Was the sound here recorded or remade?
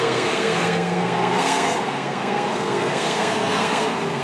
remade